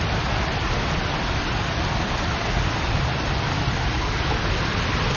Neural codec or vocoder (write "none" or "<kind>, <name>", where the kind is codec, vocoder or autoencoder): none